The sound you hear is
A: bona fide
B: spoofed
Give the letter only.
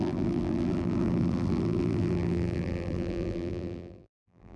B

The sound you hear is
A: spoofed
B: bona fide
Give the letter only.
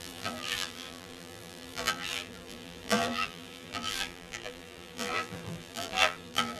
A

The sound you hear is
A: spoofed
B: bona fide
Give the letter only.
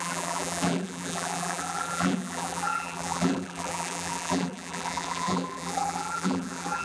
A